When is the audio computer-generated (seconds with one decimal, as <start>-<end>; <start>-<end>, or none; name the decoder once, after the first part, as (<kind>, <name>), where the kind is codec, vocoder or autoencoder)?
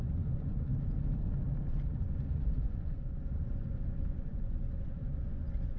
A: 0.0-0.7 (vocoder, Vocos); 1.7-5.8